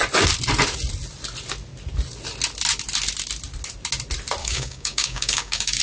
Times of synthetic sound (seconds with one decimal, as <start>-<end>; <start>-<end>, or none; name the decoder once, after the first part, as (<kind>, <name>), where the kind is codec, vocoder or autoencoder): 4.4-5.8 (codec, DAC)